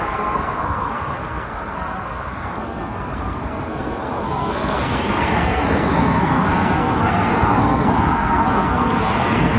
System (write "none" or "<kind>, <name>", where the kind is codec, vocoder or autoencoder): codec, SNAC